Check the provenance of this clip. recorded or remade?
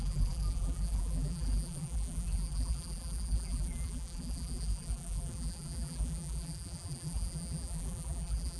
remade